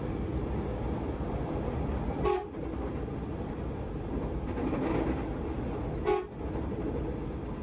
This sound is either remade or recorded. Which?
recorded